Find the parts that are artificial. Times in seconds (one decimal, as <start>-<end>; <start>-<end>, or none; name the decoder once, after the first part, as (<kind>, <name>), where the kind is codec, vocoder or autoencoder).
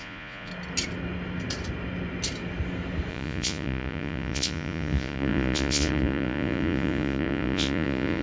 0.0-0.5 (vocoder, Vocos); 3.1-8.2